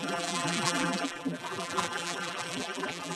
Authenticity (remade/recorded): remade